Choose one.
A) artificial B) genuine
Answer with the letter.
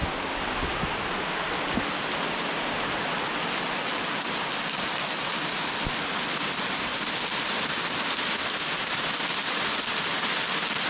B